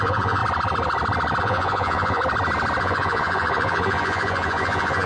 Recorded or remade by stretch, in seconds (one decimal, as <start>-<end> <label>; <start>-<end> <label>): 0.0-0.4 remade; 0.4-1.4 recorded; 1.4-2.2 remade; 2.2-2.8 recorded; 2.8-5.1 remade